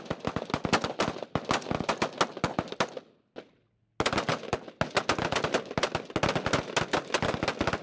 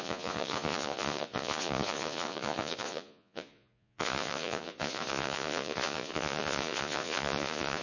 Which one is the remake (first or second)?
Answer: second